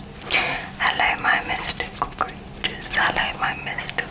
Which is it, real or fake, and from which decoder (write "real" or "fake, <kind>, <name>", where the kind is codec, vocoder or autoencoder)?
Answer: real